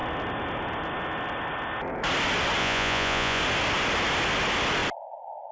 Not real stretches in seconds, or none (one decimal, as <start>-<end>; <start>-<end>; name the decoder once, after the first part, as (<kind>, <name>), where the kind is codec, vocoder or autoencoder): 2.6-3.4 (vocoder, Vocos)